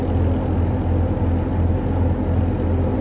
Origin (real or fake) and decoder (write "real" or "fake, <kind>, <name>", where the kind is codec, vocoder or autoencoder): real